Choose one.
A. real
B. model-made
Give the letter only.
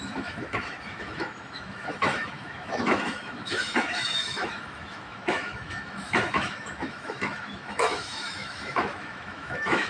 B